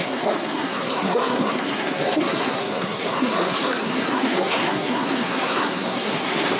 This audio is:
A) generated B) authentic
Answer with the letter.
A